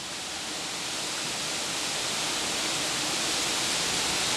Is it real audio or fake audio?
real